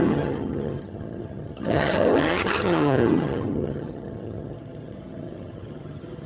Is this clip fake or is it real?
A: fake